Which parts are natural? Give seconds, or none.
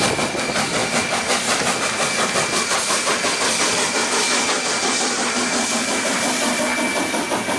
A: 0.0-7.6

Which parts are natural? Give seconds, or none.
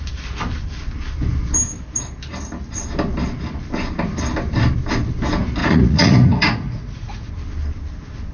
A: 0.0-5.6; 7.3-8.3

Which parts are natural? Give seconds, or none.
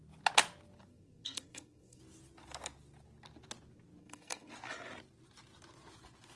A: 0.0-0.9; 2.0-4.0; 4.5-6.4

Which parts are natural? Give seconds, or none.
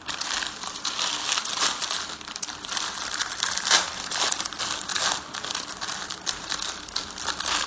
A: 4.9-6.3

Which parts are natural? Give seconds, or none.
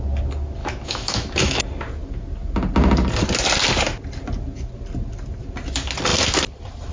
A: 0.0-0.6; 1.6-6.9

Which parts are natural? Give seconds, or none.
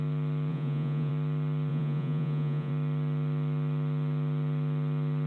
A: 0.0-0.5; 1.1-1.7; 2.7-5.3